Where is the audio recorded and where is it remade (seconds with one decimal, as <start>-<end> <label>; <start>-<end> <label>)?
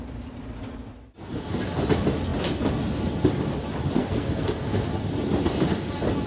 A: 0.0-4.0 recorded; 4.0-4.9 remade; 4.9-6.3 recorded